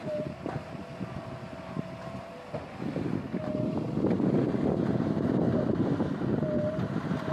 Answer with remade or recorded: recorded